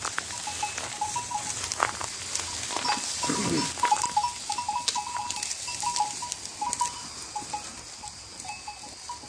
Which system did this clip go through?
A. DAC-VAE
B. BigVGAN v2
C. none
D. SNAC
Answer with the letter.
C